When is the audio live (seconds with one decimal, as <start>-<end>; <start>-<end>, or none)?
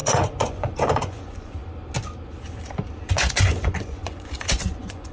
1.6-3.1